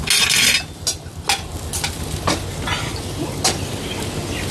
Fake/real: real